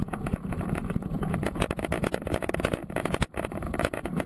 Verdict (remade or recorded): remade